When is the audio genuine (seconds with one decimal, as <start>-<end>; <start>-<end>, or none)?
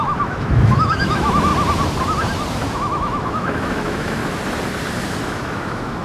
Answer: 1.5-2.5; 4.2-5.2